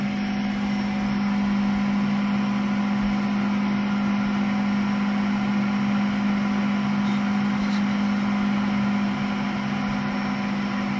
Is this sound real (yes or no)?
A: yes